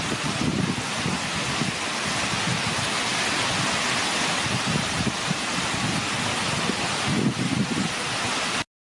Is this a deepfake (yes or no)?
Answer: no